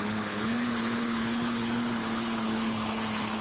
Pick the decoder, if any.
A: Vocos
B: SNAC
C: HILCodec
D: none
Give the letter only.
C